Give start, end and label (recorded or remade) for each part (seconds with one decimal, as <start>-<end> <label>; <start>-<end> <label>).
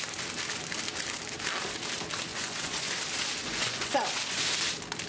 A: 0.0-2.3 recorded; 2.3-3.0 remade; 3.0-3.4 recorded; 3.4-4.4 remade; 4.4-5.1 recorded